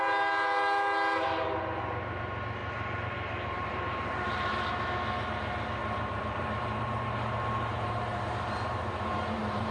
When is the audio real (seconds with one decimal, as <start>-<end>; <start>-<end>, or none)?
0.0-2.6; 4.7-5.8